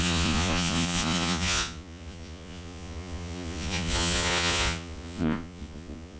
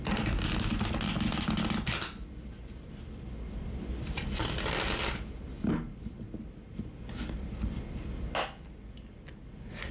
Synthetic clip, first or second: first